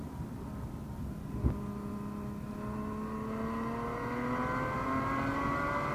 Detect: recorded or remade recorded